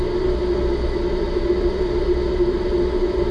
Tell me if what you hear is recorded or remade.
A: recorded